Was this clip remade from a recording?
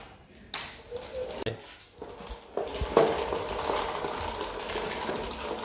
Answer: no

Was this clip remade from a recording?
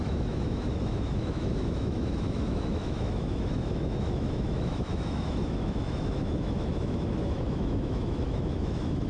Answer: yes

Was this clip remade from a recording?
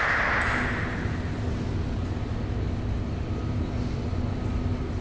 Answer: no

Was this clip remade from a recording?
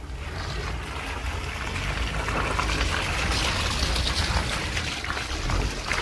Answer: no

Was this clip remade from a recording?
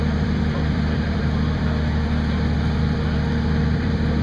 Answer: yes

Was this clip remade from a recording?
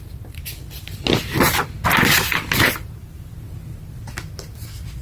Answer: no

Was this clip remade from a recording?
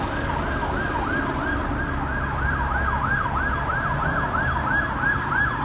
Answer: no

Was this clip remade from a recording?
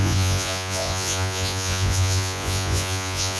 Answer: yes